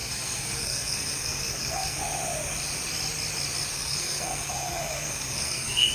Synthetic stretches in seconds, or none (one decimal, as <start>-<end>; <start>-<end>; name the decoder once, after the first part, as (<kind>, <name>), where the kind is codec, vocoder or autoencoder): 0.0-2.0 (codec, SNAC); 3.7-5.9